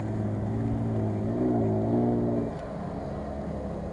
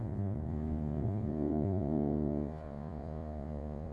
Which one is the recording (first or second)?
first